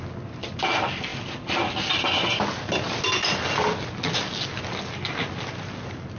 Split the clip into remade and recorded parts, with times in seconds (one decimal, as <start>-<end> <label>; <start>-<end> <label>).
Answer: 0.0-6.2 recorded